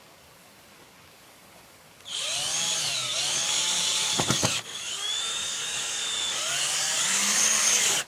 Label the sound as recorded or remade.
remade